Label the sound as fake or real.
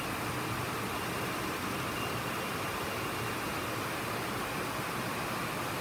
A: real